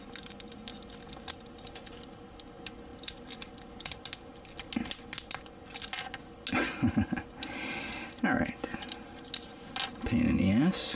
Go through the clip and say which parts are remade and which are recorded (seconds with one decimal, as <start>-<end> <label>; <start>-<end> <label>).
0.0-11.0 recorded